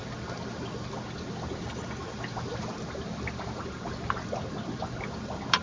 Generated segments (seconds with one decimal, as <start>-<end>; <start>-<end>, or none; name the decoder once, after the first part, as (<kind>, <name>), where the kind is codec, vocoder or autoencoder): none